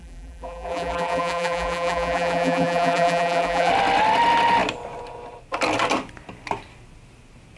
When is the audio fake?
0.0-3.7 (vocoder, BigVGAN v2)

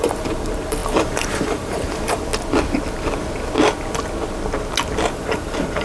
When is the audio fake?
0.0-2.3 (vocoder, BigVGAN v2); 5.1-5.8

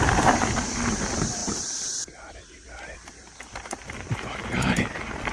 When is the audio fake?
1.4-4.4 (vocoder, BigVGAN v2)

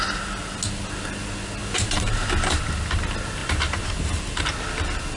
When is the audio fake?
1.6-2.3 (vocoder, BigVGAN v2); 3.4-4.4

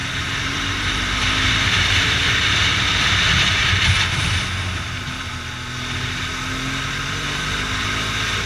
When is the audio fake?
0.0-4.0 (vocoder, BigVGAN v2)